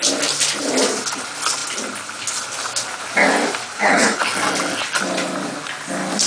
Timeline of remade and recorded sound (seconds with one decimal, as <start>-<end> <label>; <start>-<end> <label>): 0.0-3.7 recorded; 3.7-4.2 remade; 4.2-6.3 recorded